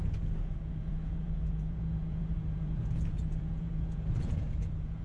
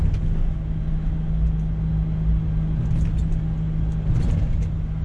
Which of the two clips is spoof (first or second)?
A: first